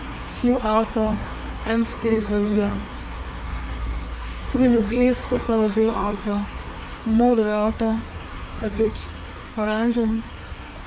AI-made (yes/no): yes